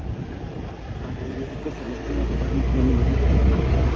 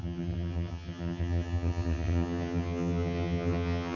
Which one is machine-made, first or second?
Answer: second